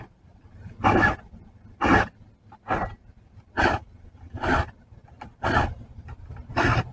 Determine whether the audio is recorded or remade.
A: recorded